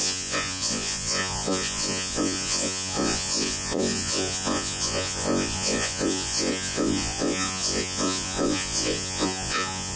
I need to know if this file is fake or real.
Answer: fake